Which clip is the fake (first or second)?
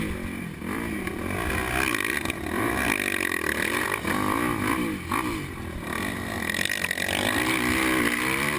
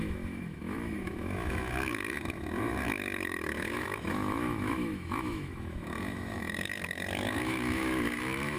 second